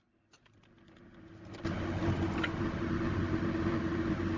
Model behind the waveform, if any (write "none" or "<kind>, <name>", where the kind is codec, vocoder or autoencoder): none